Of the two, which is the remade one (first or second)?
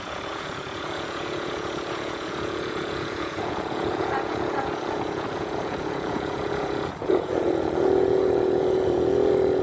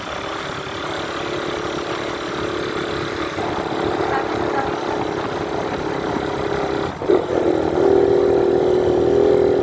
first